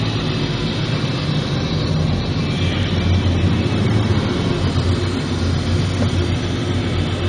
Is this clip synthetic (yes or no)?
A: no